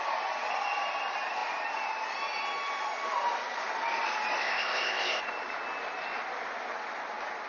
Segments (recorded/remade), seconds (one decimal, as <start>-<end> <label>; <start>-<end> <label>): 0.0-4.4 recorded; 4.4-5.2 remade; 5.2-7.5 recorded